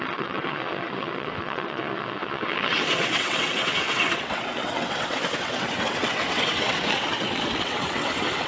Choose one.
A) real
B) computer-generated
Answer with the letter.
B